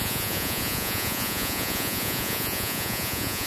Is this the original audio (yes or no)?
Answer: no